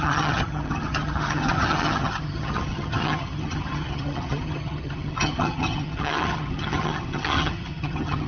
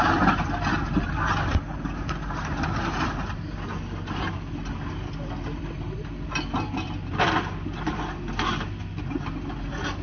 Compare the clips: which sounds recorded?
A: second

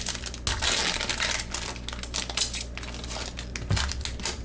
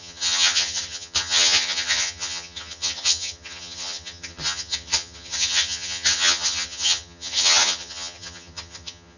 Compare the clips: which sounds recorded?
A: first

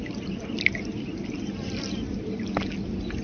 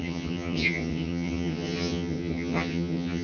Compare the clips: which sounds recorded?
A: first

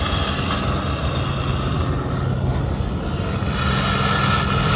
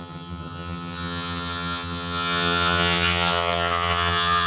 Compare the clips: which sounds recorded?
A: first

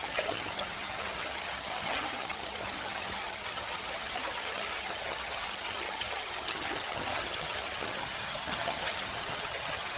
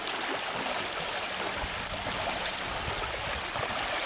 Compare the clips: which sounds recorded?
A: second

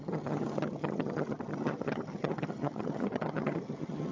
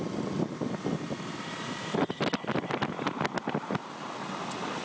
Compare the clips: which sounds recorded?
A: second